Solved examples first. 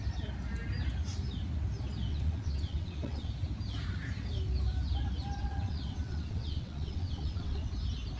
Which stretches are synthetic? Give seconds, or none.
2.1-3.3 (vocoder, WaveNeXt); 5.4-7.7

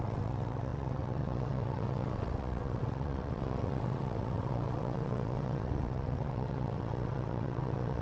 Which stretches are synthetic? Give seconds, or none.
0.0-8.0 (vocoder, WaveNeXt)

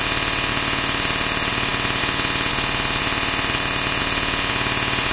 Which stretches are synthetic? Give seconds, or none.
none

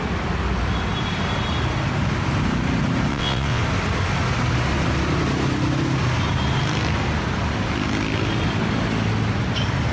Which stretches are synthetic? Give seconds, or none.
3.1-3.6 (vocoder, WaveNeXt)

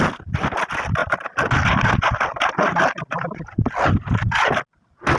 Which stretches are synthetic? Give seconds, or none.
none

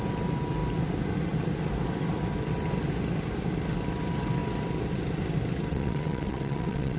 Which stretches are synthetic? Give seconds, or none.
5.7-7.0 (vocoder, WaveNeXt)